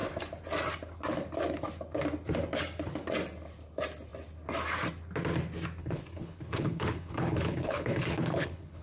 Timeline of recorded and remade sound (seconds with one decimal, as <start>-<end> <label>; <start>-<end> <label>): 0.0-5.8 recorded; 5.8-8.8 remade